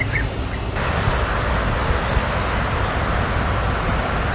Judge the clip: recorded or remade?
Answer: recorded